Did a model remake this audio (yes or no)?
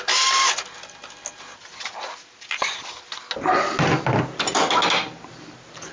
no